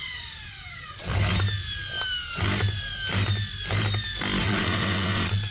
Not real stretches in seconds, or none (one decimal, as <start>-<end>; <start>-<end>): 0.0-1.1; 4.4-5.5